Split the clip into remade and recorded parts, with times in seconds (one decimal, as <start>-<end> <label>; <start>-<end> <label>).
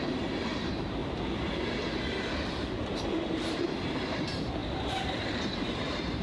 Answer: 0.0-1.0 remade; 1.0-2.8 recorded; 2.8-6.2 remade